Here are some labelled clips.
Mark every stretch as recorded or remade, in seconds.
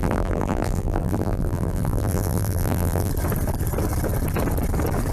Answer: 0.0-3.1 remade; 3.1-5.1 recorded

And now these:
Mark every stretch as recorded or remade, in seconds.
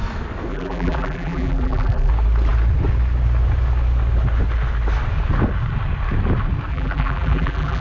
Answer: 0.0-0.5 recorded; 0.5-2.1 remade; 2.1-6.7 recorded; 6.7-7.8 remade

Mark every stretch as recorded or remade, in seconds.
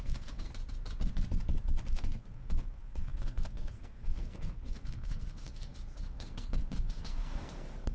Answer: 0.0-0.5 remade; 0.5-1.9 recorded; 1.9-7.9 remade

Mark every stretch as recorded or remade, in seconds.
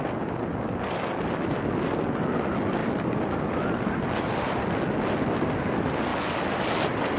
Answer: 0.0-7.2 recorded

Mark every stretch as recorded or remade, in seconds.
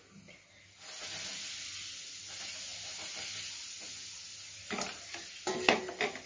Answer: 0.0-6.3 recorded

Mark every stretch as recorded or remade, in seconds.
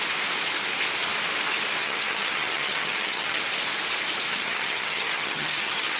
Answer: 0.0-1.8 recorded; 1.8-3.4 remade; 3.4-4.3 recorded; 4.3-6.0 remade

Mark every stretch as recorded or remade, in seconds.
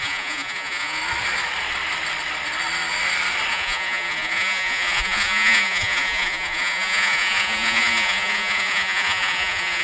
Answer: 0.0-1.0 remade; 1.0-3.5 recorded; 3.5-9.8 remade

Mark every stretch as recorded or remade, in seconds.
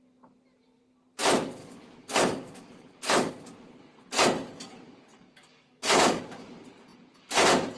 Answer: 0.0-1.6 recorded; 1.6-3.3 remade; 3.3-5.1 recorded; 5.1-6.2 remade; 6.2-7.8 recorded